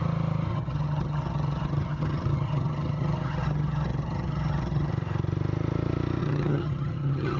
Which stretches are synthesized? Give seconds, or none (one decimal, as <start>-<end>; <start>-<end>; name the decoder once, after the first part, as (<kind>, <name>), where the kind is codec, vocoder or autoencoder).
0.5-4.9 (vocoder, HiFi-GAN); 6.2-7.4

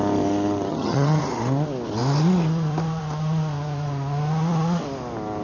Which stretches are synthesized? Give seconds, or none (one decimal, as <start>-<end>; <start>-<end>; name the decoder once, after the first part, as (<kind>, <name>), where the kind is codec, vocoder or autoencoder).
0.7-1.2 (vocoder, HiFi-GAN)

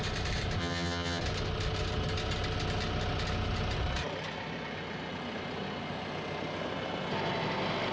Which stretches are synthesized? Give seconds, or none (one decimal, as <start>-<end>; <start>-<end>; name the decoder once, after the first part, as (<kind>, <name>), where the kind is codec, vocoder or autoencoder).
0.6-1.2 (vocoder, HiFi-GAN)

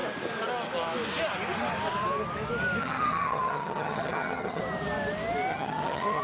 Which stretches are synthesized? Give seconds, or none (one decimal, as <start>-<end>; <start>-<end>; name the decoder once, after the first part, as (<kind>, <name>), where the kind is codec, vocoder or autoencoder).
2.8-4.6 (vocoder, HiFi-GAN); 5.5-6.2

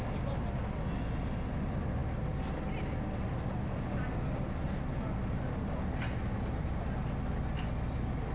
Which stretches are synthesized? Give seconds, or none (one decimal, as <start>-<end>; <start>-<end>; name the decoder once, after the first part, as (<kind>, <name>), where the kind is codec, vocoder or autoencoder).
none

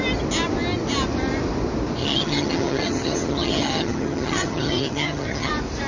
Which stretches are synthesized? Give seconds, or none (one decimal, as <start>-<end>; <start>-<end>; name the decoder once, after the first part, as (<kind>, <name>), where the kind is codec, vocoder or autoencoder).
2.0-5.5 (vocoder, HiFi-GAN)

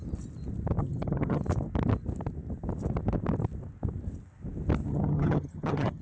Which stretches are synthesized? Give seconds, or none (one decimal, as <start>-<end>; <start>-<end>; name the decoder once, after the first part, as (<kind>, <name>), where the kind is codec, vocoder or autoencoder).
0.8-1.4 (vocoder, HiFi-GAN); 4.9-6.0

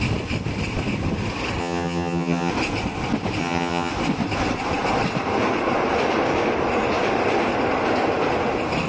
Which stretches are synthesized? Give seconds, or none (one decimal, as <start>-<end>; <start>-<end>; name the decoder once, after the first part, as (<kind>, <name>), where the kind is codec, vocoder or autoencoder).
1.6-2.5 (vocoder, HiFi-GAN); 3.4-3.9